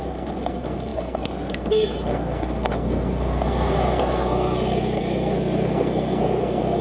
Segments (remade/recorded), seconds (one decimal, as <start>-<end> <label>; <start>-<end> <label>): 0.0-6.8 remade